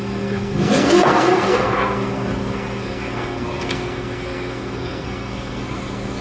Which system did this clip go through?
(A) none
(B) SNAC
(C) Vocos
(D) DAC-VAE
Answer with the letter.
B